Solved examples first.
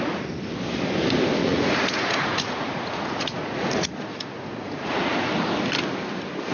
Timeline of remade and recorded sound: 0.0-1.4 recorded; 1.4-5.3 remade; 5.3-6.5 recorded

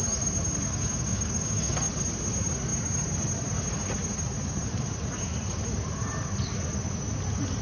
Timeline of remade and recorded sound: 0.0-0.7 recorded; 0.7-1.9 remade; 1.9-7.6 recorded

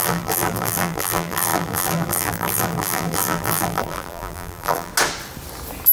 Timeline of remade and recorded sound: 0.0-4.9 remade; 4.9-5.9 recorded

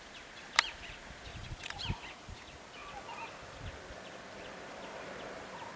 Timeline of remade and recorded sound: 0.0-1.3 recorded; 1.3-1.8 remade; 1.8-5.8 recorded